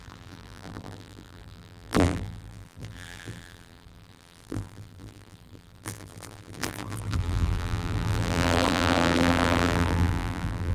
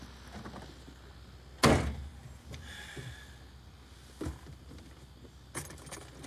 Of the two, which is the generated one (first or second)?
first